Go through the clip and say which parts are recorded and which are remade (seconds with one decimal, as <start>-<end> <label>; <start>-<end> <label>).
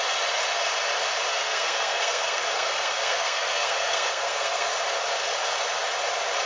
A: 0.0-1.3 recorded; 1.3-4.7 remade; 4.7-6.5 recorded